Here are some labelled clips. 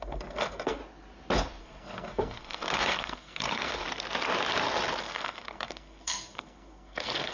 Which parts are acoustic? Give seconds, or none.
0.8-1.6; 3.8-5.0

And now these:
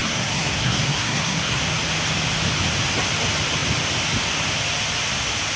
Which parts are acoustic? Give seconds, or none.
1.6-5.6

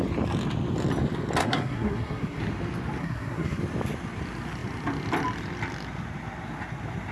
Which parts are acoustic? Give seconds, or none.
0.0-1.4; 2.4-3.0; 3.6-7.1

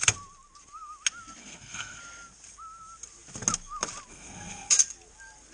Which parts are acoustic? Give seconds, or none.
0.0-1.4; 2.0-4.1; 4.7-5.5

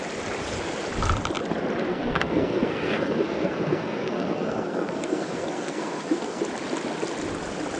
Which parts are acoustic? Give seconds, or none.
0.0-1.9; 6.4-7.8

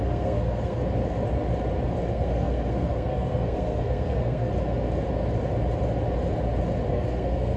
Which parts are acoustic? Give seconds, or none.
0.8-2.1; 4.5-6.9

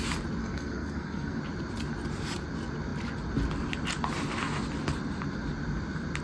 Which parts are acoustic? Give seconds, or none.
0.0-0.4; 1.4-6.2